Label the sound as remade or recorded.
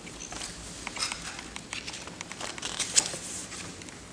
recorded